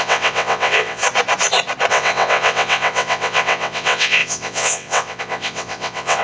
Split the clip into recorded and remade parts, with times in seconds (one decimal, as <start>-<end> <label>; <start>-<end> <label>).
0.0-1.0 remade; 1.0-1.9 recorded; 1.9-6.2 remade